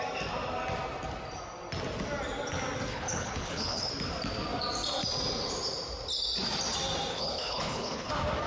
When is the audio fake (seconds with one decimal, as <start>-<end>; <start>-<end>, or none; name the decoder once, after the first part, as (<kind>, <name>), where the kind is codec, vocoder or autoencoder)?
2.9-3.9 (codec, HILCodec); 7.1-8.1